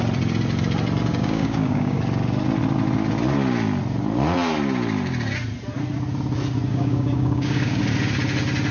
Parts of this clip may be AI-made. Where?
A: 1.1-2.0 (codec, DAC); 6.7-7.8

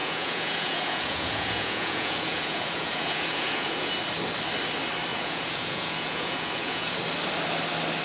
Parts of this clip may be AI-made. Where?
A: 0.0-3.9 (vocoder, Vocos); 5.1-7.0

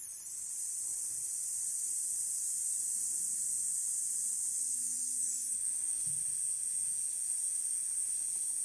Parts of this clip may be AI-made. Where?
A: 4.7-6.0 (codec, DAC)

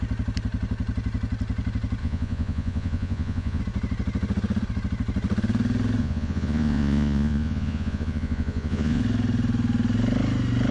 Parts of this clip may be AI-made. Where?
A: 2.0-3.6 (vocoder, Vocos); 6.0-9.0

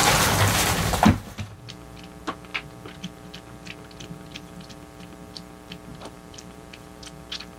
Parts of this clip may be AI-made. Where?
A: 5.9-7.0 (vocoder, BigVGAN v2)

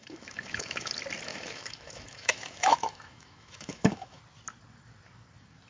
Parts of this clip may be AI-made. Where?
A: 0.0-0.9 (autoencoder, DAC-VAE); 1.3-4.2

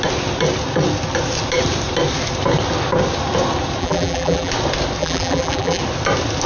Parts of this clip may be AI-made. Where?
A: 3.8-4.5 (vocoder, BigVGAN v2); 5.0-5.8

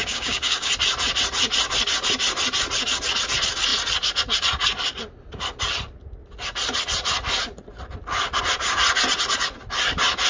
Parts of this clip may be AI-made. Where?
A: 0.0-0.7 (codec, DAC)